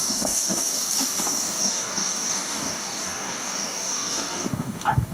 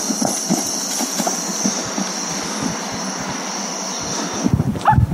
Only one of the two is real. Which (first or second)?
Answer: second